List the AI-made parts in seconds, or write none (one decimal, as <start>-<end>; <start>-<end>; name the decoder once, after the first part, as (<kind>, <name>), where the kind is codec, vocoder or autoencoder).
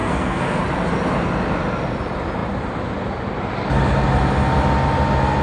0.0-0.6 (codec, SNAC)